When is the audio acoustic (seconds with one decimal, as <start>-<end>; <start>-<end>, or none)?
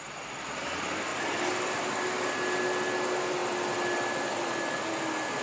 0.0-5.4